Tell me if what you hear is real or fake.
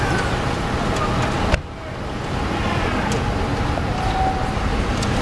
real